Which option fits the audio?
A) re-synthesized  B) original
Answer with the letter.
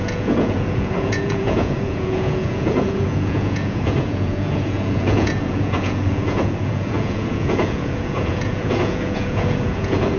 A